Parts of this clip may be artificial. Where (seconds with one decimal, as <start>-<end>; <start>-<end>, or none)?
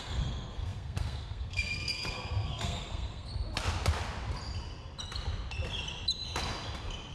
0.0-3.3